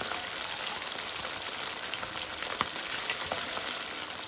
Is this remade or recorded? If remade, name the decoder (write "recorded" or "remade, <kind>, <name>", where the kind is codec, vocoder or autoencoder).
recorded